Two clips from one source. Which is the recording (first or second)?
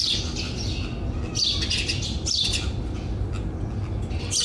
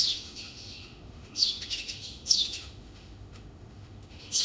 first